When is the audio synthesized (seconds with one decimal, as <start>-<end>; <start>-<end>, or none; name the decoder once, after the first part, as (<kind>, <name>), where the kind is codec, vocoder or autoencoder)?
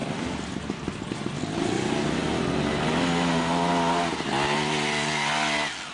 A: none